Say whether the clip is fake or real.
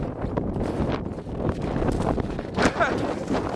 real